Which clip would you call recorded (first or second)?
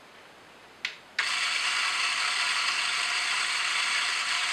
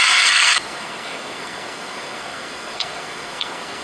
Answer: first